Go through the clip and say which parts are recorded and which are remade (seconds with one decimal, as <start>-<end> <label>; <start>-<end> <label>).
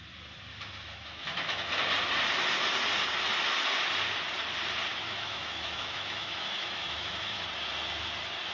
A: 0.0-0.5 recorded; 0.5-1.7 remade; 1.7-4.9 recorded; 4.9-7.4 remade; 7.4-8.5 recorded